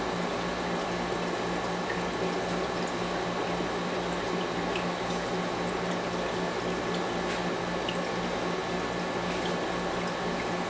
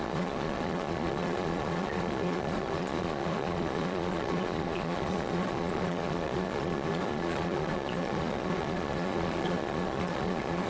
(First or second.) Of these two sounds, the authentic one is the first